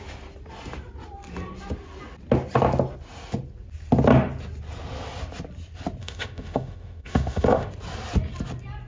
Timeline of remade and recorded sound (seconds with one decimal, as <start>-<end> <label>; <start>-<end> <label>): 0.0-6.0 recorded; 6.0-7.7 remade; 7.7-8.9 recorded